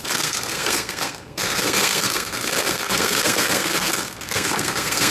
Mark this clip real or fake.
fake